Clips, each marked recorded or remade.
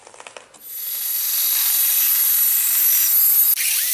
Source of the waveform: recorded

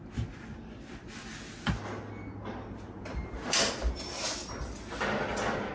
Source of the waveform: recorded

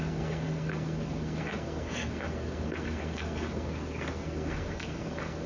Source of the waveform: remade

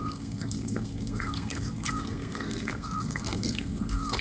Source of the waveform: remade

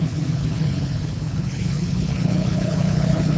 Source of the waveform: remade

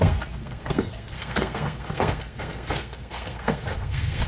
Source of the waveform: remade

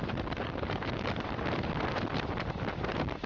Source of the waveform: remade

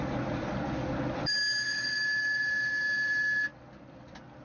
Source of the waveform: recorded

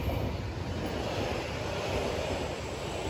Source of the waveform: recorded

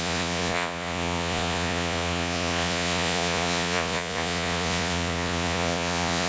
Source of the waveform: remade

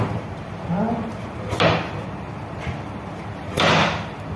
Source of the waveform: recorded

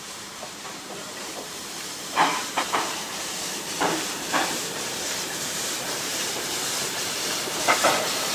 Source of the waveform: remade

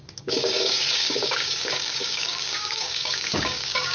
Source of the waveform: remade